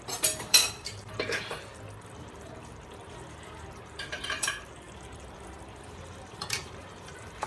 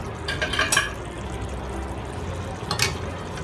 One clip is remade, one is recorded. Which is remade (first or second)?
first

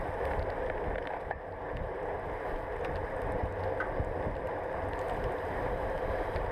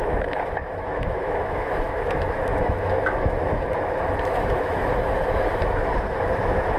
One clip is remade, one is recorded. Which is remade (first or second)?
second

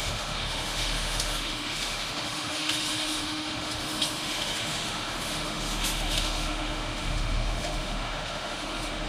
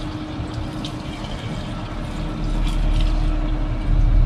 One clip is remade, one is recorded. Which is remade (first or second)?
first